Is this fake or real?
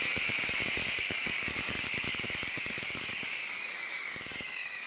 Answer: fake